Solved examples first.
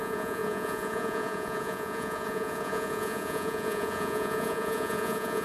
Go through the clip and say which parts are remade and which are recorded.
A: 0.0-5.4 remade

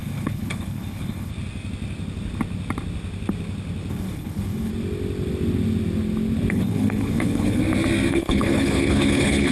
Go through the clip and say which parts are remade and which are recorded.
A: 0.0-1.3 remade; 1.3-3.9 recorded; 3.9-4.7 remade; 4.7-6.5 recorded; 6.5-7.6 remade; 7.6-8.1 recorded; 8.1-9.5 remade

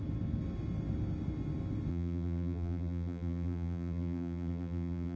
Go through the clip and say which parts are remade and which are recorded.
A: 0.0-1.9 recorded; 1.9-5.2 remade

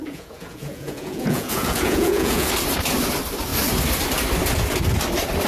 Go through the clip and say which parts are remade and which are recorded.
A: 0.0-2.5 remade; 2.5-5.5 recorded

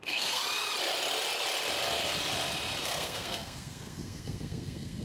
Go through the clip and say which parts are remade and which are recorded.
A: 0.0-0.4 remade; 0.4-2.8 recorded; 2.8-5.0 remade

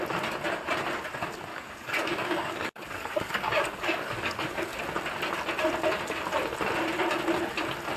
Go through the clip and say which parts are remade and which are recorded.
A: 0.0-1.5 recorded; 1.5-4.8 remade; 4.8-8.0 recorded